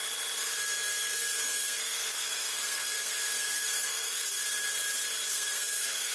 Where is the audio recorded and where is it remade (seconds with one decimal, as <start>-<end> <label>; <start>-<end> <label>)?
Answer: 0.0-0.6 recorded; 0.6-4.4 remade; 4.4-5.3 recorded; 5.3-6.1 remade